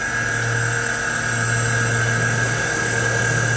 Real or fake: real